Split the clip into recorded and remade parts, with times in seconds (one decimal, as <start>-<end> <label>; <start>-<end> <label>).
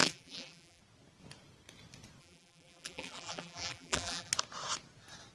0.0-0.8 remade; 0.8-2.2 recorded; 2.2-4.3 remade; 4.3-5.3 recorded